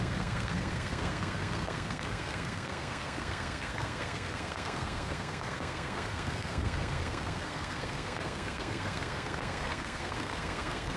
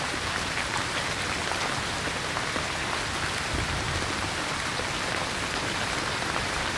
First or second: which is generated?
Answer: first